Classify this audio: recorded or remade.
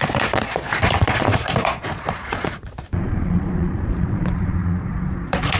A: remade